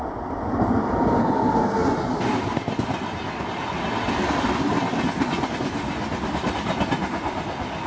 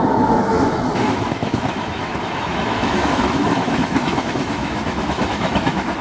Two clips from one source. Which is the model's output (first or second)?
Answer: second